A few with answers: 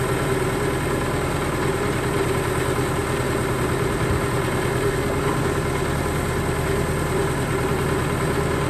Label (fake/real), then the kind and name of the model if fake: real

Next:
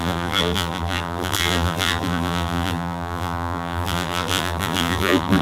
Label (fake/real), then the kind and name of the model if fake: fake, vocoder, BigVGAN v2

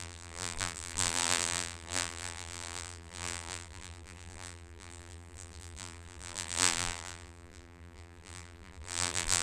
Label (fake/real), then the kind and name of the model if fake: fake, vocoder, BigVGAN v2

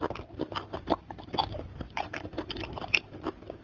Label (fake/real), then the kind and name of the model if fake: fake, vocoder, BigVGAN v2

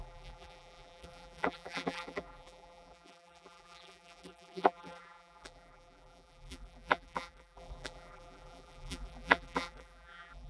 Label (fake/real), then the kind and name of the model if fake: fake, vocoder, BigVGAN v2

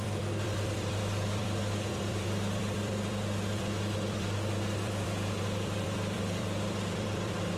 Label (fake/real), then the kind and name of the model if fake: fake, vocoder, BigVGAN v2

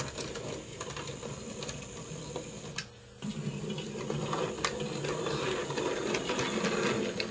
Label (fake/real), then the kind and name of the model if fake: real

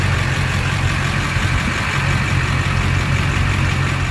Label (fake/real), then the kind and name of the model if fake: fake, vocoder, BigVGAN v2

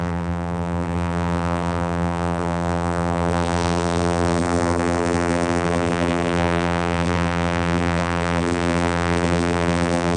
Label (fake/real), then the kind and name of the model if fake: fake, vocoder, BigVGAN v2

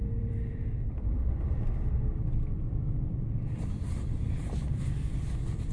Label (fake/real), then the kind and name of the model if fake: fake, vocoder, BigVGAN v2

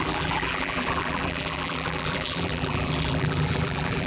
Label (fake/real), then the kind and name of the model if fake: fake, vocoder, BigVGAN v2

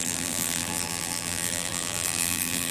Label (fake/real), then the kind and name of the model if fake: fake, vocoder, BigVGAN v2